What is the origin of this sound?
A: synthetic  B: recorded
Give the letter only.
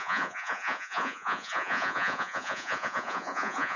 A